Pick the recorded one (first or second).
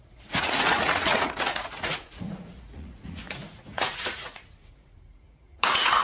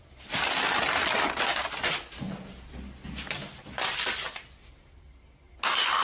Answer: second